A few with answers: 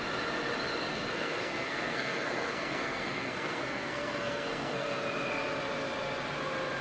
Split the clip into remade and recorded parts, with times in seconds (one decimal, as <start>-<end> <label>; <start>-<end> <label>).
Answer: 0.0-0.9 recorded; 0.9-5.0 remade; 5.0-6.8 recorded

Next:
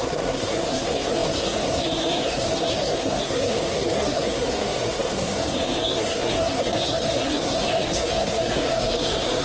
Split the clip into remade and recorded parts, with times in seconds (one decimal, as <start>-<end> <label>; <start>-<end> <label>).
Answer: 0.0-9.4 remade

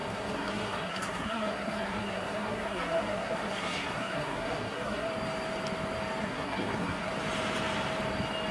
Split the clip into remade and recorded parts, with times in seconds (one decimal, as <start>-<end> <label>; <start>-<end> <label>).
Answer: 0.0-5.1 remade; 5.1-6.2 recorded; 6.2-7.1 remade; 7.1-8.5 recorded

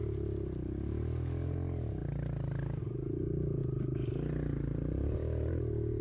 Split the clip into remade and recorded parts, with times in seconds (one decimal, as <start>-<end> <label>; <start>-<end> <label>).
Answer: 0.0-6.0 recorded